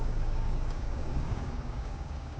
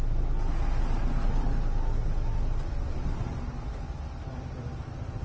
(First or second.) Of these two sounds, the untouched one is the second